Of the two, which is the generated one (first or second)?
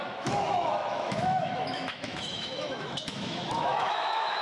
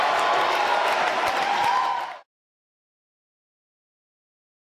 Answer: first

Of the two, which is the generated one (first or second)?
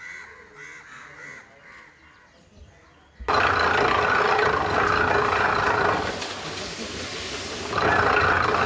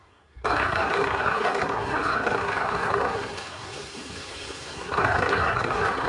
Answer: second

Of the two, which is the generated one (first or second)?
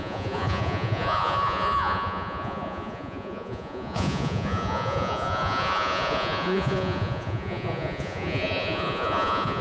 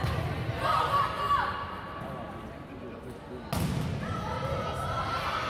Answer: first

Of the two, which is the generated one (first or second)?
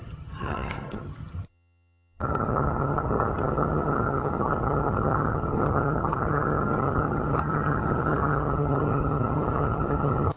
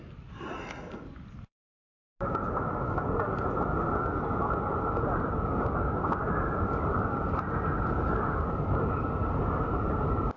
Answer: first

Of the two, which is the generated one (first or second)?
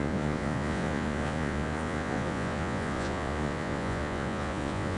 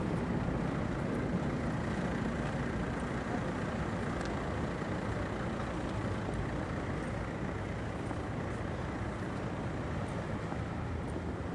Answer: first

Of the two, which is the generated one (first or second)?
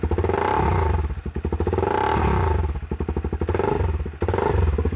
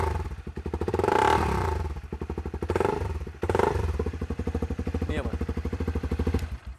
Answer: second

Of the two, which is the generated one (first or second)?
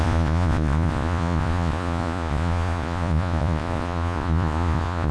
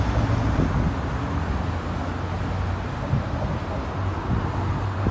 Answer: first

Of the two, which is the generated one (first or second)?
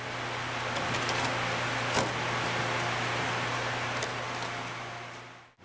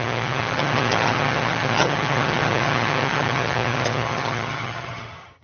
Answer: second